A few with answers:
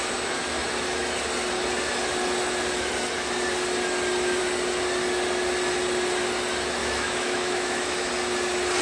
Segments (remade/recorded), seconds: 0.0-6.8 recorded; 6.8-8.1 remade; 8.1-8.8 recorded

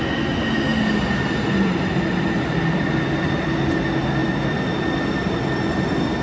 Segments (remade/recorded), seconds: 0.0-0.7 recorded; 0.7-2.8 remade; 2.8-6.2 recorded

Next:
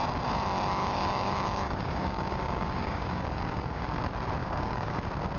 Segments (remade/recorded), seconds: 0.0-0.8 recorded; 0.8-4.0 remade; 4.0-4.4 recorded; 4.4-5.0 remade; 5.0-5.4 recorded

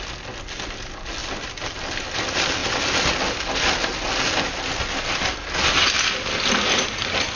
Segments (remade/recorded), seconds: 0.0-7.3 recorded

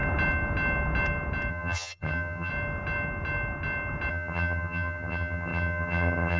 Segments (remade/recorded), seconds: 0.0-1.5 recorded; 1.5-2.5 remade; 2.5-4.1 recorded; 4.1-6.4 remade

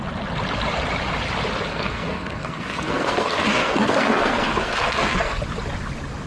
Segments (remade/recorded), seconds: 0.0-1.7 recorded; 1.7-5.4 remade; 5.4-6.3 recorded

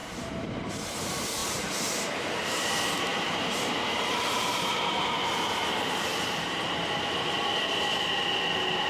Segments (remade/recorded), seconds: 0.0-0.7 remade; 0.7-1.4 recorded; 1.4-2.7 remade; 2.7-3.1 recorded; 3.1-7.0 remade; 7.0-8.9 recorded

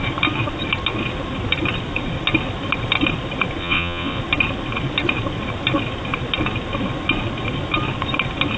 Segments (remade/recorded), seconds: 0.0-3.6 recorded; 3.6-4.2 remade; 4.2-8.6 recorded